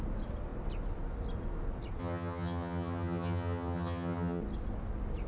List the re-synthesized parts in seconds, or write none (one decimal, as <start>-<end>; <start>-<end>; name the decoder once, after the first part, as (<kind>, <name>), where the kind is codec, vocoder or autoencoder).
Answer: 2.0-4.4 (vocoder, HiFi-GAN)